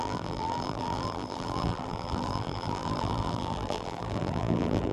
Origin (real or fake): fake